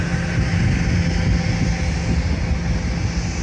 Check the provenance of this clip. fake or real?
real